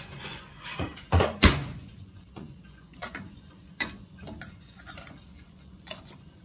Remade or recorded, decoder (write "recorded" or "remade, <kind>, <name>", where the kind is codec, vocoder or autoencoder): remade, vocoder, Vocos